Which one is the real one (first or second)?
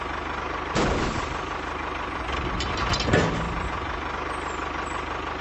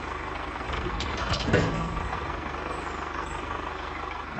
first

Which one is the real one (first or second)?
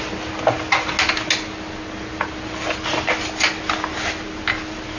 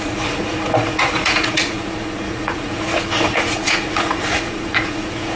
first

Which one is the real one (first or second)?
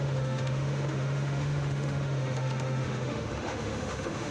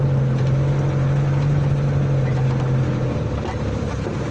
second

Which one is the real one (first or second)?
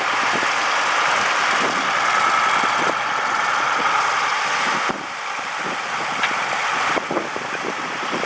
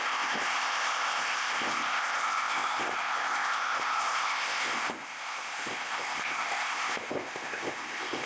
first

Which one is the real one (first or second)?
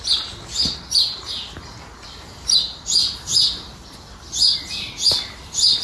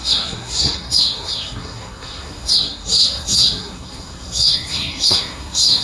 first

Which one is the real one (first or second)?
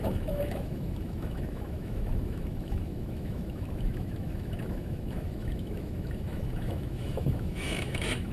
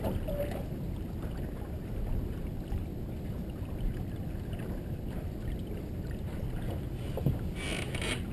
second